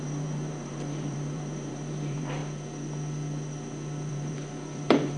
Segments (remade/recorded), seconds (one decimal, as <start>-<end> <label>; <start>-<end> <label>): 0.0-2.4 remade; 2.4-4.1 recorded; 4.1-5.2 remade